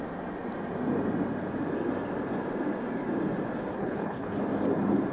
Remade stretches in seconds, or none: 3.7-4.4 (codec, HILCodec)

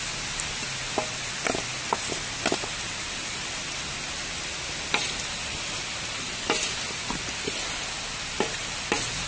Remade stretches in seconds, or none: none

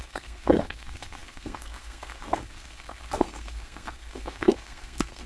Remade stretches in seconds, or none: 0.0-5.3 (codec, SNAC)

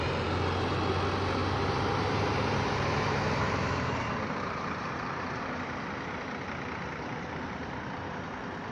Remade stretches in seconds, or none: 1.4-5.4 (vocoder, BigVGAN v2)